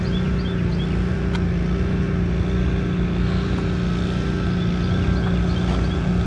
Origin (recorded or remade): recorded